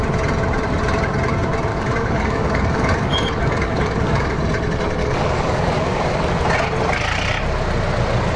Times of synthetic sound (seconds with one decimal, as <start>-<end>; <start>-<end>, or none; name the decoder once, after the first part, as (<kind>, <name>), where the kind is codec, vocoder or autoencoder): 1.7-4.4 (codec, DAC); 5.0-6.3